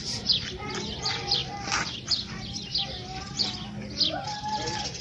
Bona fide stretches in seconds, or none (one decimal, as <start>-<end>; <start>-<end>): 0.0-5.0